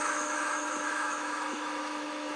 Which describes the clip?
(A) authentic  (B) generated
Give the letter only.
B